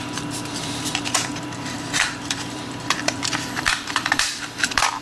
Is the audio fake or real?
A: fake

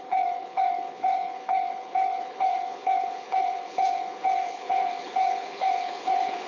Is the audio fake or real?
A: fake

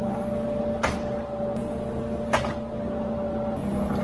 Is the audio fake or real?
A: real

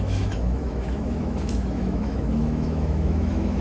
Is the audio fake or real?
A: fake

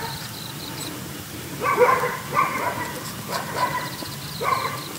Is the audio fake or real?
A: real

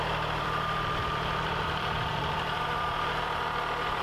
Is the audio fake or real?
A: fake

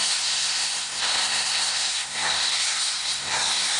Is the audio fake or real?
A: fake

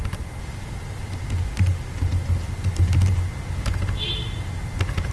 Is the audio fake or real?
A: real